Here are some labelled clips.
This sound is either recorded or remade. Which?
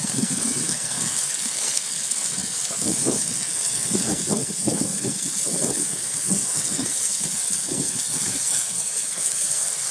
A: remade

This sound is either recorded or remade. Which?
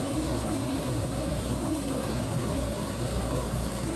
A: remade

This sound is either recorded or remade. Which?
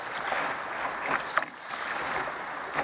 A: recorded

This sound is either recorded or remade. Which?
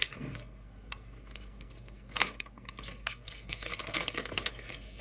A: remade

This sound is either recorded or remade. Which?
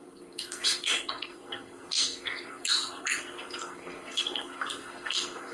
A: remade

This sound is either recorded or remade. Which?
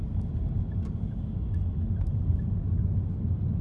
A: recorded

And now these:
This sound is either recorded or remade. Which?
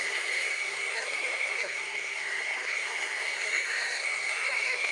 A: remade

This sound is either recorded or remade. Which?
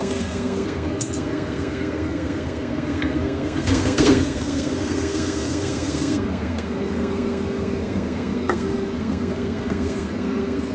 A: remade